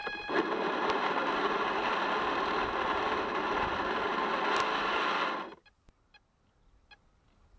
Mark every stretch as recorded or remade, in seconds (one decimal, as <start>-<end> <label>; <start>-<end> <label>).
0.0-7.6 recorded